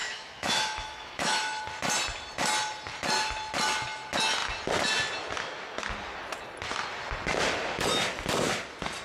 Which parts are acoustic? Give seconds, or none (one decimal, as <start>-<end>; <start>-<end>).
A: 1.6-9.0